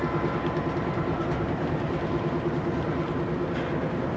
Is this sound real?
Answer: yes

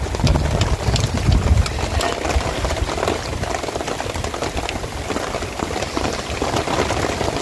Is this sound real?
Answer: yes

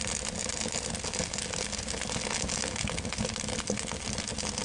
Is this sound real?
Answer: yes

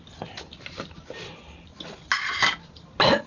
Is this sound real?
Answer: yes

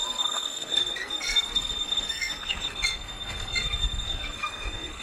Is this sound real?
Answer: no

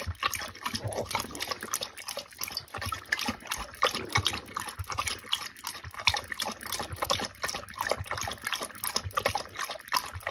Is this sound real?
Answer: yes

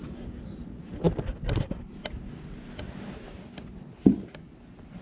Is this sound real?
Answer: yes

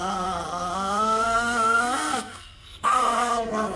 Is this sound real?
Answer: no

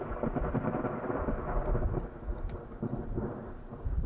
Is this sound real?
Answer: yes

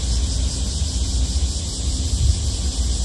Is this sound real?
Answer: yes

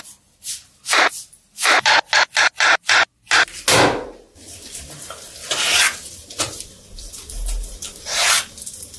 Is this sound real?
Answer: yes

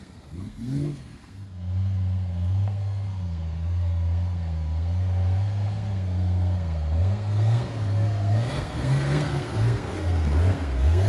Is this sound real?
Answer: no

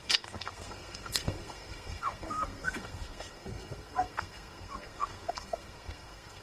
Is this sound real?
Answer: no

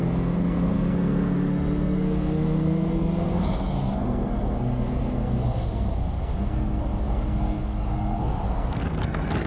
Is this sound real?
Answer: no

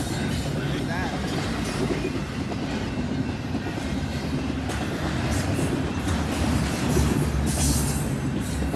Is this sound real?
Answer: yes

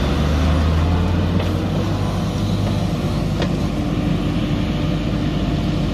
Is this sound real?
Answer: yes